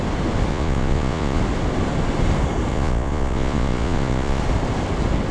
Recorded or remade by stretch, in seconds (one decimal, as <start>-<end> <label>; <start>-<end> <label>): 0.0-0.5 recorded; 0.5-1.4 remade; 1.4-2.7 recorded; 2.7-4.4 remade; 4.4-5.3 recorded

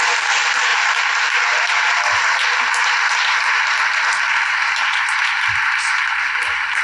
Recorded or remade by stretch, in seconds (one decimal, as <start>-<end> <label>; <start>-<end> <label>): 0.0-0.7 remade; 0.7-4.7 recorded; 4.7-6.8 remade